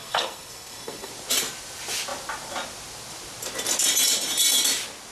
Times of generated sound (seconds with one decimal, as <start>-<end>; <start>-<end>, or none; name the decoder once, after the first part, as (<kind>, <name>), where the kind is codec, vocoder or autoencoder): 0.0-1.1 (codec, SNAC)